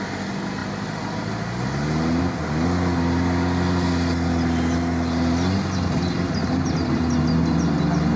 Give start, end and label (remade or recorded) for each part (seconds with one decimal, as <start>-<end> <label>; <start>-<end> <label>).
0.0-8.2 recorded